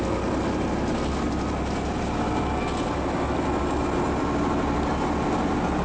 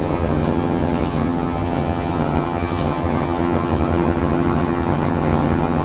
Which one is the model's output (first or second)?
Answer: second